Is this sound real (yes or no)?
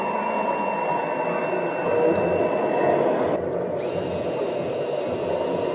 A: yes